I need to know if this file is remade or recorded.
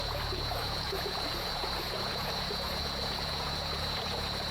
remade